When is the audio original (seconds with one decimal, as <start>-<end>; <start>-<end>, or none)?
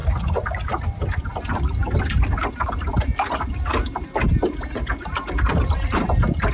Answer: 0.0-6.5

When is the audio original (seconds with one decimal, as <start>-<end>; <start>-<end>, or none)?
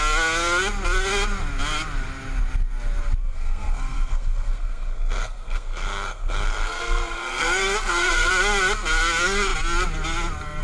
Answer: 0.0-3.2; 8.3-10.6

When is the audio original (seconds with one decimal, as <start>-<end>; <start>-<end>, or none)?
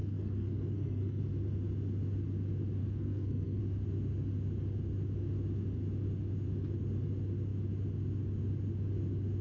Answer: 1.2-2.8; 3.6-9.4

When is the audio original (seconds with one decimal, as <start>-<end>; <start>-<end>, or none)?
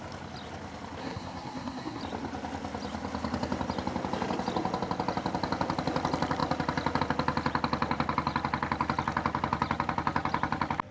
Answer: 0.0-1.0; 2.0-10.9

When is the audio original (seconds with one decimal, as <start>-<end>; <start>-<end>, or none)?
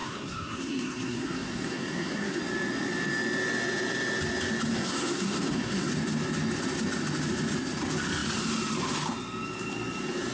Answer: 2.4-4.7; 5.9-10.3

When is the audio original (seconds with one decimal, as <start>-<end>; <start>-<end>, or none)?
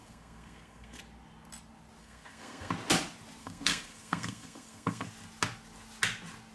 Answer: 1.0-2.0; 2.7-3.4; 5.1-6.5